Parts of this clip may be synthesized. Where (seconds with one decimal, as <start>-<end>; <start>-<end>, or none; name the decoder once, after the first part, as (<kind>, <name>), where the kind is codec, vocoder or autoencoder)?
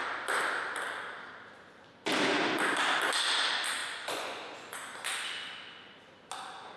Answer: 3.8-4.8 (vocoder, Vocos)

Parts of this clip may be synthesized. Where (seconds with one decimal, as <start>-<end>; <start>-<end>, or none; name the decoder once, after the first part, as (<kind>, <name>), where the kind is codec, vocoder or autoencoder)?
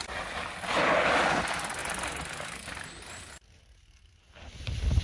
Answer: none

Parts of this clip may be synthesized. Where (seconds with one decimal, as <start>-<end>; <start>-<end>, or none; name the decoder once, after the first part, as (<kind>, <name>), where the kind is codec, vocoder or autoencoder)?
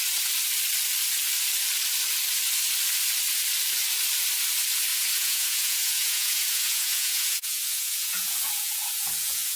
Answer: 4.9-9.6 (vocoder, Vocos)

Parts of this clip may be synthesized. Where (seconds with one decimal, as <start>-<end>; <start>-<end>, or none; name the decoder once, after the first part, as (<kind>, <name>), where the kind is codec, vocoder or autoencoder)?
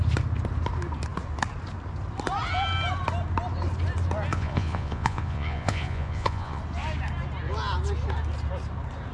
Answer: 4.3-6.6 (vocoder, Vocos)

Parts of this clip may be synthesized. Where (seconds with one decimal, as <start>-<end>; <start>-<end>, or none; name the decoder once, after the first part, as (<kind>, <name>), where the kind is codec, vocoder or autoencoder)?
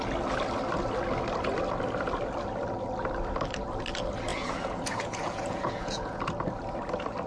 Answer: 4.3-6.2 (vocoder, Vocos)